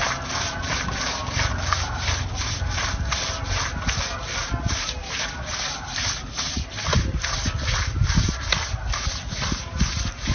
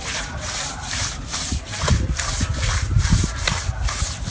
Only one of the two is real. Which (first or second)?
first